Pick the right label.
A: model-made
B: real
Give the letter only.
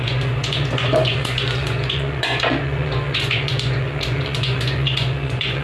A